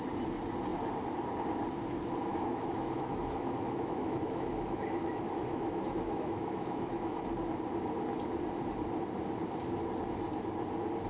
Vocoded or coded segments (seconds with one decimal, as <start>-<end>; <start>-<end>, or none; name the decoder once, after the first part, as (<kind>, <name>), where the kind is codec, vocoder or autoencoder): 2.3-7.2 (autoencoder, DAC-VAE)

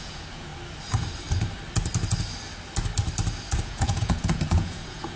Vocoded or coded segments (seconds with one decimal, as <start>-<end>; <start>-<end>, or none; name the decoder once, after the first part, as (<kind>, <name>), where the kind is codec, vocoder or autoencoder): 0.0-0.5 (vocoder, Vocos); 3.6-5.2

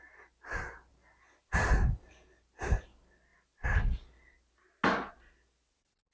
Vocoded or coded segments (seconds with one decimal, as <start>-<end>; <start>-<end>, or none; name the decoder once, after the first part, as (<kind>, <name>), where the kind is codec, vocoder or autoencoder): none

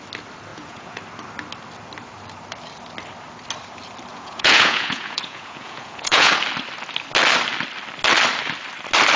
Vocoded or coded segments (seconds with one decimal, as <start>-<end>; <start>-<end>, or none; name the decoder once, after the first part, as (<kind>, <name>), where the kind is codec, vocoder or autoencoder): 0.5-1.0 (vocoder, Vocos); 4.1-6.3

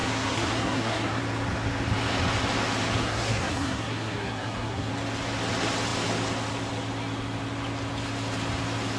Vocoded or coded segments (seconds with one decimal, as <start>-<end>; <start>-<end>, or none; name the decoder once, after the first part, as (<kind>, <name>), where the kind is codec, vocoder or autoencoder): 0.0-1.2 (codec, SNAC); 3.0-4.9

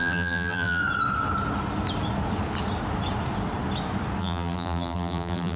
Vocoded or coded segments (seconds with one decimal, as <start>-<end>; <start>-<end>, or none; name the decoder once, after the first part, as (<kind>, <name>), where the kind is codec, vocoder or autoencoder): 0.0-0.8 (vocoder, BigVGAN v2); 4.2-5.6

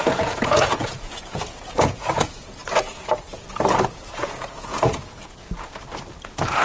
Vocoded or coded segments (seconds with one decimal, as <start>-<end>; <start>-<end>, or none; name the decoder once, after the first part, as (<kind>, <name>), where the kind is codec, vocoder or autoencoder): 0.0-5.8 (vocoder, Vocos)

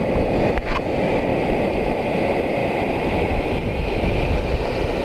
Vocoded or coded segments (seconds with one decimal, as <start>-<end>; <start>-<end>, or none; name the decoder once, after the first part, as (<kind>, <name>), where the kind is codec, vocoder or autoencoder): 2.6-3.3 (vocoder, BigVGAN v2)